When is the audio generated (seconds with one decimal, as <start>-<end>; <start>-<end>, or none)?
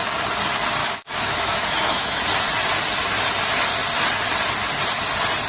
0.8-2.2